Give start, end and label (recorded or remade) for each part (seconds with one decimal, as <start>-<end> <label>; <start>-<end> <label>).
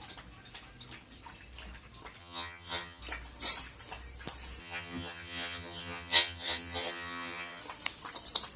0.0-2.2 recorded; 2.2-3.0 remade; 3.0-4.6 recorded; 4.6-7.6 remade; 7.6-8.6 recorded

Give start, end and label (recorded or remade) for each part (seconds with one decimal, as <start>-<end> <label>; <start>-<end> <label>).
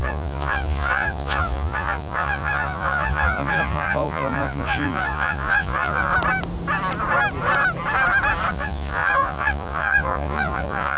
0.0-6.1 remade; 6.1-8.5 recorded; 8.5-11.0 remade